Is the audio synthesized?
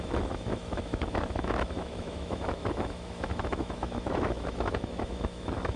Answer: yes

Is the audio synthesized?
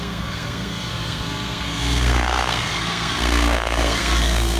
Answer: yes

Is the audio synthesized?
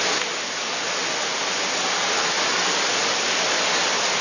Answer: no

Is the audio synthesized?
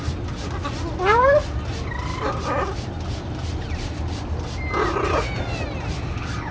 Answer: no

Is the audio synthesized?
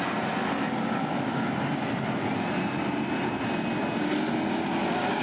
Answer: no